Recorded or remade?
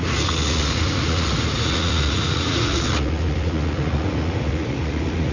remade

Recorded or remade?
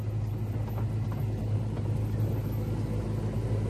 recorded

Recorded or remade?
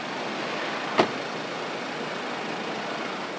recorded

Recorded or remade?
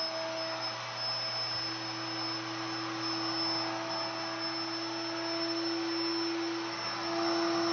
recorded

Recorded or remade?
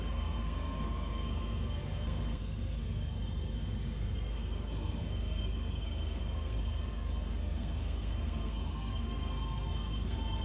remade